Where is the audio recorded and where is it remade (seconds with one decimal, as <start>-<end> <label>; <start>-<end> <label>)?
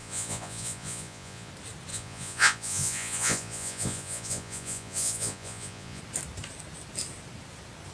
0.0-1.5 remade; 1.5-1.9 recorded; 1.9-6.0 remade; 6.0-7.9 recorded